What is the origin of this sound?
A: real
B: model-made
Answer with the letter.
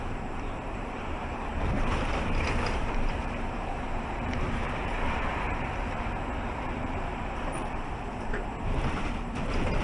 B